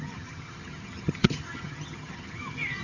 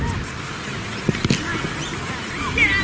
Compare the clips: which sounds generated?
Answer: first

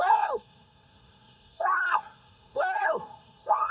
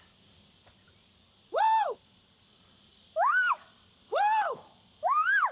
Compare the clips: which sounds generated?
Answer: first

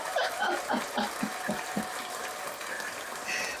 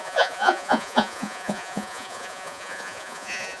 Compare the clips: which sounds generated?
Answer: second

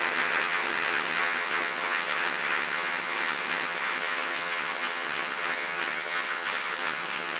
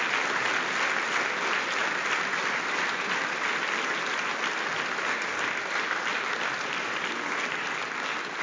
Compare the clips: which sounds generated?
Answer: first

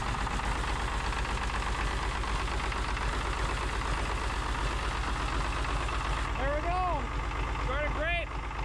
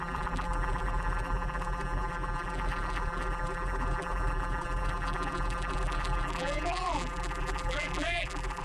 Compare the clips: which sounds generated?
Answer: second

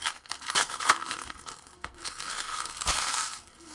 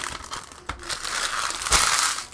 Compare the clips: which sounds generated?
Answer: first